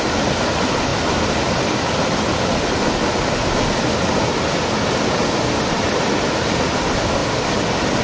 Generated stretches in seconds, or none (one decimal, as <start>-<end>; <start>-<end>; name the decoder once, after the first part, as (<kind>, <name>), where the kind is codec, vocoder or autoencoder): none